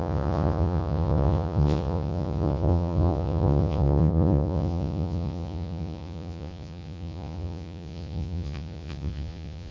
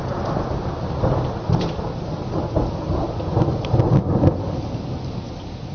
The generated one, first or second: first